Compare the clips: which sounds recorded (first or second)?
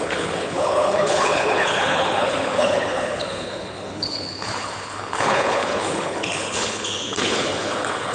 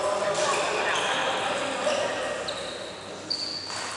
second